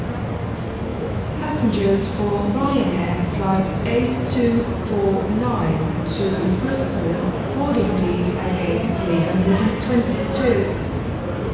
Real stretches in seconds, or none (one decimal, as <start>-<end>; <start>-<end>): 0.0-0.9; 3.6-5.0; 8.5-11.5